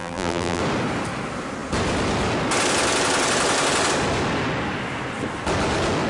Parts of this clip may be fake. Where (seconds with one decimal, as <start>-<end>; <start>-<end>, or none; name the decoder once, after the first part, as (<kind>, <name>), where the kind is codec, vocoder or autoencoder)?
0.0-0.6 (vocoder, BigVGAN v2)